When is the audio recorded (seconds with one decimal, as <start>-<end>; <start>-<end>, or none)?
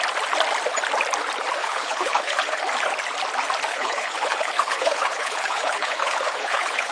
0.0-1.6; 2.6-3.7